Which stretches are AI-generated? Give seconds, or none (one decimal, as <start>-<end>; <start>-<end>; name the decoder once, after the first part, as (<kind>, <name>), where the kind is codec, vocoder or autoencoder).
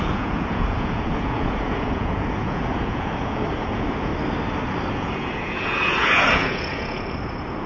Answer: 0.0-4.1 (vocoder, Vocos); 4.9-7.7